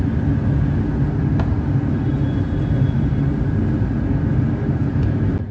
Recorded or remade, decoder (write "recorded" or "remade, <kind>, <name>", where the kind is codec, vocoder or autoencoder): recorded